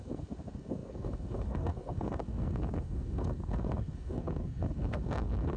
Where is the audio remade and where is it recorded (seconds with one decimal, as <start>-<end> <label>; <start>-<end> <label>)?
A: 0.0-5.6 remade